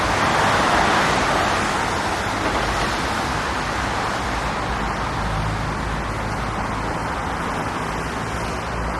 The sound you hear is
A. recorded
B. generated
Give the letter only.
A